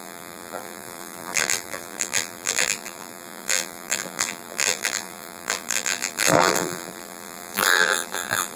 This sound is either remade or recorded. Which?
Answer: remade